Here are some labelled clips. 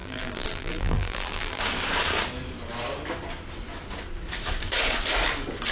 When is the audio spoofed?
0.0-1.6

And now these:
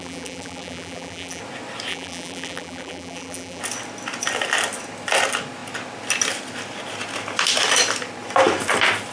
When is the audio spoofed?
0.0-1.4; 1.9-3.6

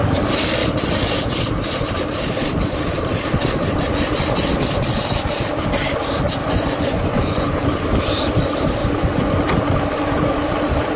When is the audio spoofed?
6.4-7.6; 8.8-9.3

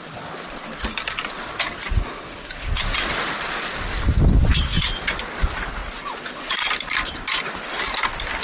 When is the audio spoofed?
none